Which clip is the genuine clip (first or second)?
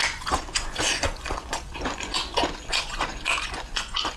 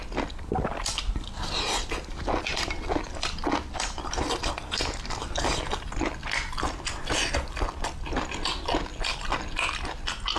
second